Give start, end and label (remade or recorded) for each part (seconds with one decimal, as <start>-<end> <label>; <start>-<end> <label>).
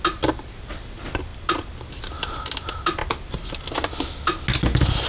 0.0-5.1 recorded